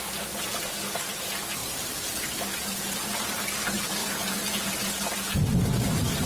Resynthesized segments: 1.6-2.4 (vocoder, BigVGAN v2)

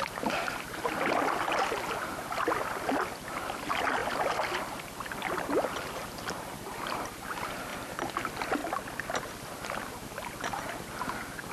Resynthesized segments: none

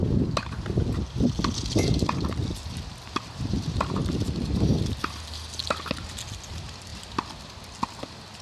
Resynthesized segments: none

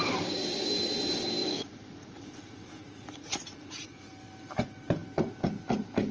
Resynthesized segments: 1.4-4.0 (vocoder, Vocos)

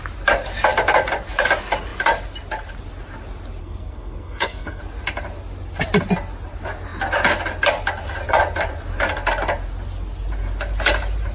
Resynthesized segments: 3.6-4.8 (codec, SNAC)